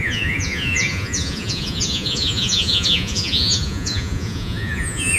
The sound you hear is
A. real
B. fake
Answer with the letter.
B